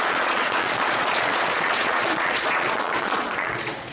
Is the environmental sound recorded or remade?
remade